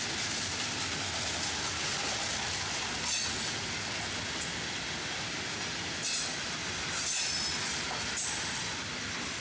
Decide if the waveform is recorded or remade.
recorded